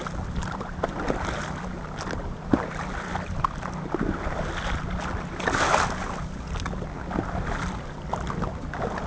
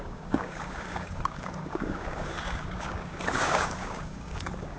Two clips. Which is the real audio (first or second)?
first